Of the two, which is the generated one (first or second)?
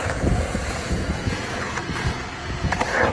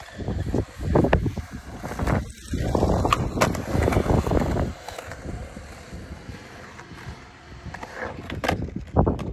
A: first